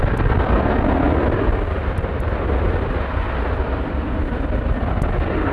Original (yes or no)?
yes